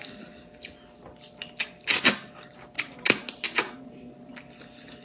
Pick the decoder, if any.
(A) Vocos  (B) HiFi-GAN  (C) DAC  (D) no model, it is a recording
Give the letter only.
D